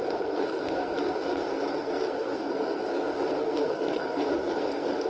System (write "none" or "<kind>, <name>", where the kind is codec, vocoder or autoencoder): codec, SNAC